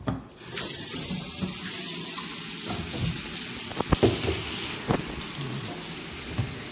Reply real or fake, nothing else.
real